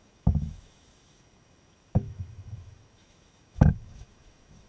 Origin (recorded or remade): remade